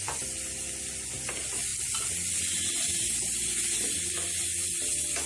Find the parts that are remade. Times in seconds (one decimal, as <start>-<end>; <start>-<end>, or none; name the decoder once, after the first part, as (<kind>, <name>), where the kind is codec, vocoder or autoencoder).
none